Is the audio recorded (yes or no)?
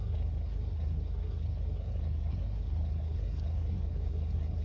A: no